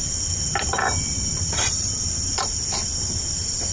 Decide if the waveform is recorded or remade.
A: recorded